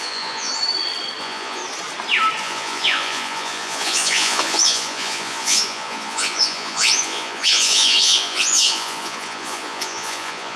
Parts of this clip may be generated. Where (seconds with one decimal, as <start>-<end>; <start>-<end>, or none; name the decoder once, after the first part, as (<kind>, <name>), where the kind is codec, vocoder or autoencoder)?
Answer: 0.0-0.5 (vocoder, Vocos); 1.2-1.6; 2.4-10.6